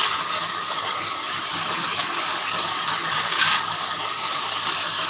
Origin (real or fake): fake